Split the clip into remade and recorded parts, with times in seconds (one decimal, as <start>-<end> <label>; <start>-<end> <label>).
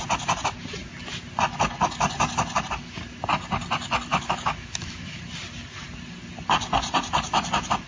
0.0-4.1 recorded; 4.1-5.2 remade; 5.2-7.9 recorded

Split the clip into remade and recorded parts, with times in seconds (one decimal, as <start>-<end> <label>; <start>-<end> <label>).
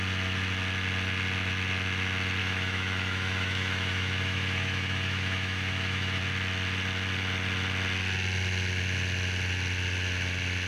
0.0-2.4 recorded; 2.4-6.2 remade; 6.2-10.7 recorded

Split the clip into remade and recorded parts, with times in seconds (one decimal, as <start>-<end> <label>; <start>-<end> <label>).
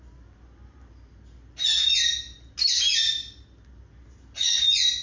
0.0-5.0 recorded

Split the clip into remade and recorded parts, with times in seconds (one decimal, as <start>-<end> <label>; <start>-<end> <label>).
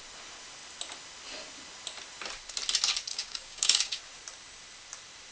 0.0-3.1 recorded; 3.1-4.0 remade; 4.0-5.3 recorded